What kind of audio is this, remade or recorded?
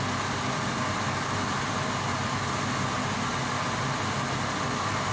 recorded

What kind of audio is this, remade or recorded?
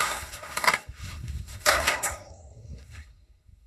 remade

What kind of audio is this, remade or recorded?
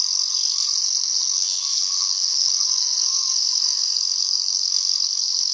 remade